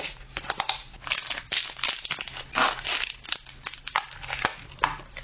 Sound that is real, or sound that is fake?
real